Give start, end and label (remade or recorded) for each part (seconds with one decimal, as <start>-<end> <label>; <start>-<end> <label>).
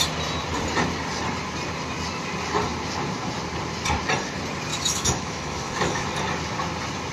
0.0-4.7 recorded; 4.7-6.1 remade; 6.1-7.1 recorded